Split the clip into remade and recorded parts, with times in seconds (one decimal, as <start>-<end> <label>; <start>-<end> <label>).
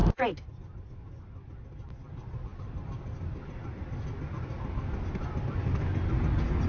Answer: 0.0-6.7 recorded